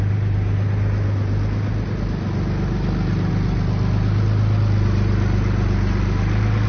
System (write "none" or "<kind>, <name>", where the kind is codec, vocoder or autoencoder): none